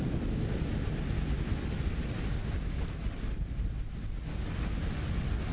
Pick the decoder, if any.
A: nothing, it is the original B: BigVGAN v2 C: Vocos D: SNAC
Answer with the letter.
A